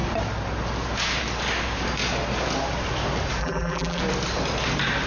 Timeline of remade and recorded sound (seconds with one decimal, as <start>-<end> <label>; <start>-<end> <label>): 0.0-3.4 recorded; 3.4-4.0 remade; 4.0-5.1 recorded